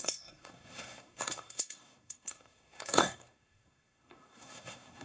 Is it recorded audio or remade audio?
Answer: remade